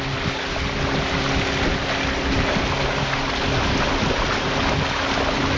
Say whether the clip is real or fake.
real